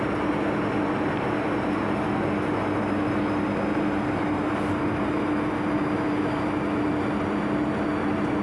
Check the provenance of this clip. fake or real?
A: real